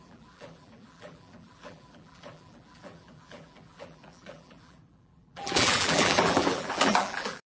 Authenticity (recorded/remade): remade